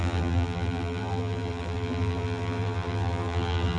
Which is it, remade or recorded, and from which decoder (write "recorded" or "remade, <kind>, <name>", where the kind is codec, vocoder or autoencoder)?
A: remade, vocoder, BigVGAN v2